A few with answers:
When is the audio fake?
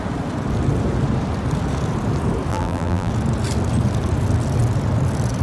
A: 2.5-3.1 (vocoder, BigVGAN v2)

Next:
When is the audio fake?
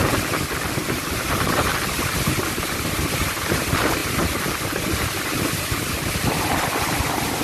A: 0.8-1.7 (vocoder, BigVGAN v2)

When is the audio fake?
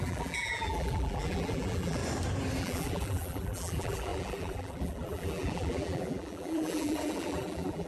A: 0.0-2.0 (vocoder, BigVGAN v2); 2.6-7.9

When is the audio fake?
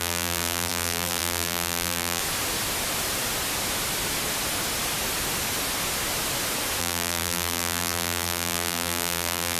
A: 0.0-2.2 (vocoder, BigVGAN v2); 6.8-9.6